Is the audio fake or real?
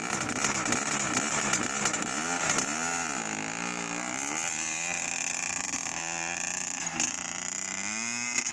real